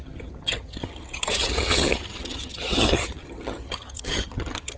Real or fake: fake